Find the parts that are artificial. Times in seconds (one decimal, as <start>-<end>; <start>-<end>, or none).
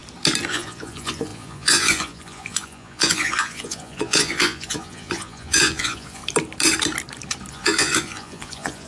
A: 0.5-6.2; 7.5-8.9